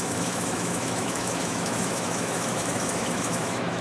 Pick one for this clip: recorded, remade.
remade